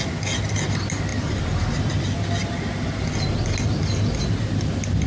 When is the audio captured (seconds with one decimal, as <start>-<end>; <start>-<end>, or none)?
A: 0.0-5.1